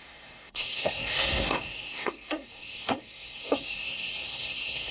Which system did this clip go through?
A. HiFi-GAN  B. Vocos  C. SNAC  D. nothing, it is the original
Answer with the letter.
C